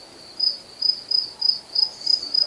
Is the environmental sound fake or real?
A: real